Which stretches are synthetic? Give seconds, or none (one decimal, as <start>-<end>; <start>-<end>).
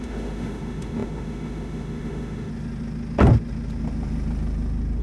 0.0-2.5